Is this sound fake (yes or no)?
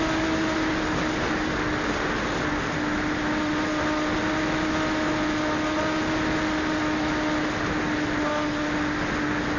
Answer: no